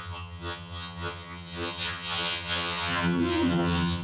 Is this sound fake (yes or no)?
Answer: yes